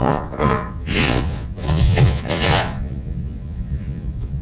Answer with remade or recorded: remade